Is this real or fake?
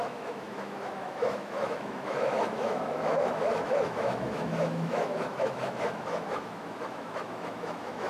fake